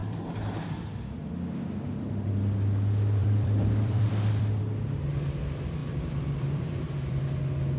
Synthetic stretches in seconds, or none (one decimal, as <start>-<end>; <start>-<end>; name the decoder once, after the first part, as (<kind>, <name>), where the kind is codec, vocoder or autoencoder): 0.0-1.3 (vocoder, BigVGAN v2); 3.2-4.6; 5.8-7.2